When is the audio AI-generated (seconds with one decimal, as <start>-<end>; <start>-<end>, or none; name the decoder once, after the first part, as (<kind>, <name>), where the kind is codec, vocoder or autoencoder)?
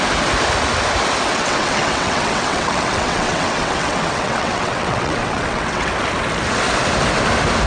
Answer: 1.3-5.9 (vocoder, WaveNeXt)